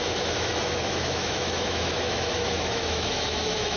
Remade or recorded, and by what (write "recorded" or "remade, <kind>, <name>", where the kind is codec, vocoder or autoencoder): remade, autoencoder, DAC-VAE